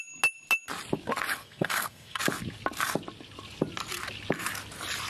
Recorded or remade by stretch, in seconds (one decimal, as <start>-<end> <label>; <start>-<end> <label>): 0.0-1.4 recorded; 1.4-2.2 remade; 2.2-5.1 recorded